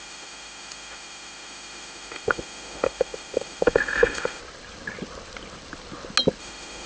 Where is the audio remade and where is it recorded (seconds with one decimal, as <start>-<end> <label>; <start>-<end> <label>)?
0.0-4.4 remade; 4.4-6.4 recorded; 6.4-6.9 remade